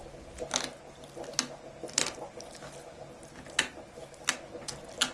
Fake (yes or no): no